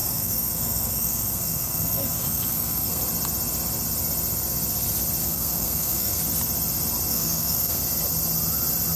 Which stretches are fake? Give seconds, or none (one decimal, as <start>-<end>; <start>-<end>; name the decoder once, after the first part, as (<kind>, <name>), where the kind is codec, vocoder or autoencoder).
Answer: 0.0-3.0 (codec, SNAC); 5.2-6.2; 7.1-7.8